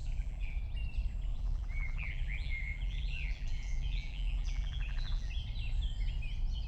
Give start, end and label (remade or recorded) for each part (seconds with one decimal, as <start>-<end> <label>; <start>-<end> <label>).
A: 0.0-0.6 remade; 0.6-1.3 recorded; 1.3-5.3 remade; 5.3-6.7 recorded